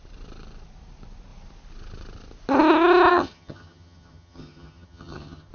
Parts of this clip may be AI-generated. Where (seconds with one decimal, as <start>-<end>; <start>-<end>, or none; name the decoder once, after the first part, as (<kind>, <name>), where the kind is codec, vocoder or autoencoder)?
3.1-5.5 (vocoder, HiFi-GAN)